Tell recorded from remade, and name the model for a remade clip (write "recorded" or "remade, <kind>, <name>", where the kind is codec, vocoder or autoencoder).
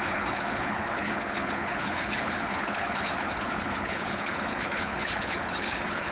remade, codec, HILCodec